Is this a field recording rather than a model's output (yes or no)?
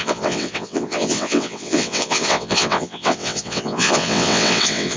no